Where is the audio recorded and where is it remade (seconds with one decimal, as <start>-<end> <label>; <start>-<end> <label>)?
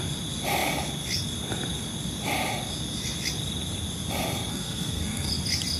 0.0-4.5 recorded; 4.5-5.3 remade; 5.3-5.8 recorded